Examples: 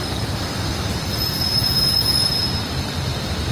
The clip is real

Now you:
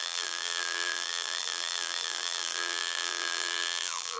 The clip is fake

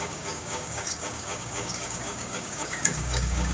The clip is fake